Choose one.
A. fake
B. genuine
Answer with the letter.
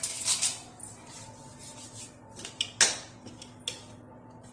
B